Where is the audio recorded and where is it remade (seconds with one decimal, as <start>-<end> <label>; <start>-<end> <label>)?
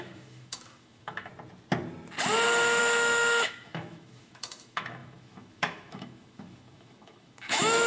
0.0-1.3 remade; 1.3-2.8 recorded; 2.8-7.9 remade